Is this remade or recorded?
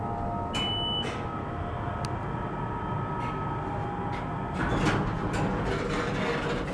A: recorded